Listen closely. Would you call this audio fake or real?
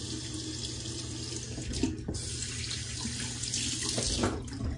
real